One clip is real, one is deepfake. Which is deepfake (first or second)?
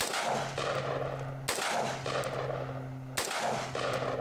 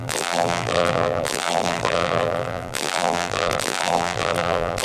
second